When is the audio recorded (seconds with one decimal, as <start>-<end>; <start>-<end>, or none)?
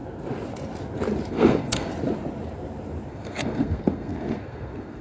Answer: 0.0-1.3; 1.9-3.1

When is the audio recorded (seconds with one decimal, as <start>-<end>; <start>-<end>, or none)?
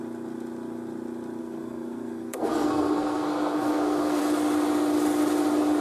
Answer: 0.0-1.4; 4.2-5.8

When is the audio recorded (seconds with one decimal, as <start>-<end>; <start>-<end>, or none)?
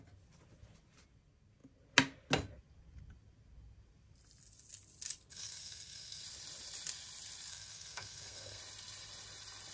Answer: 0.0-5.3; 6.2-7.5; 8.6-9.7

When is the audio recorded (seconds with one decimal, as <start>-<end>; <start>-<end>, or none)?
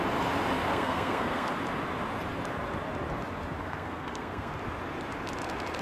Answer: 0.0-0.7; 1.5-3.6; 4.5-5.8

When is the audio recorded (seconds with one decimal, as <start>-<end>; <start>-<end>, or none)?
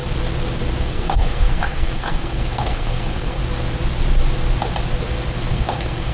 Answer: 0.0-0.8; 3.4-5.5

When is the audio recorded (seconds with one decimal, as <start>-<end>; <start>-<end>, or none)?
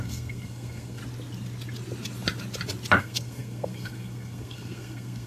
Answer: 1.0-3.0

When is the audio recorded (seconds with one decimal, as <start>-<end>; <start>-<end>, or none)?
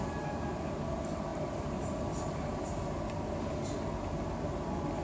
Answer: 0.0-5.0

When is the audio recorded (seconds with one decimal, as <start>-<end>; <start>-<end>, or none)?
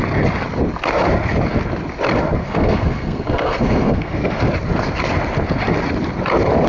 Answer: 0.0-2.4; 4.4-6.7